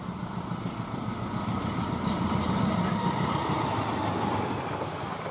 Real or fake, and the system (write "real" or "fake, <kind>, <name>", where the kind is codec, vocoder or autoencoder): real